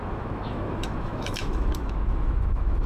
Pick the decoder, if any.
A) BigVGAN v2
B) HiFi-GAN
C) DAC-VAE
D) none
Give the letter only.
C